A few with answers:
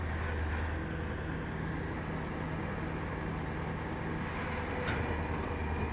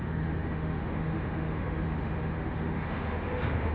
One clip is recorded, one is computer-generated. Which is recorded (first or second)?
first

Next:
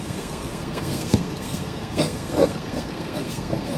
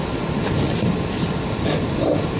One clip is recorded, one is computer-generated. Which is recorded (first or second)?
second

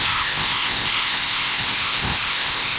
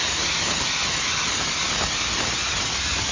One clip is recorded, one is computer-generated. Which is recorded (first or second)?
second